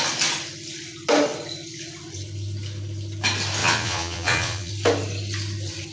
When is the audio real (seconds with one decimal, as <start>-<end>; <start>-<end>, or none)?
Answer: 0.0-3.6; 4.7-5.9